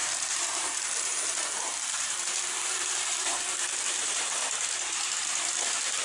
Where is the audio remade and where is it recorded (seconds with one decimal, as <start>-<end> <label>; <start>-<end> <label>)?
0.0-4.4 remade; 4.4-5.6 recorded; 5.6-6.0 remade